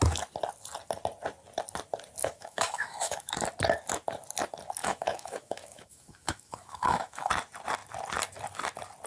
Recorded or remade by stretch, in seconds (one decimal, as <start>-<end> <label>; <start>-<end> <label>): 0.0-2.2 recorded; 2.2-3.3 remade; 3.3-4.8 recorded; 4.8-7.3 remade; 7.3-9.1 recorded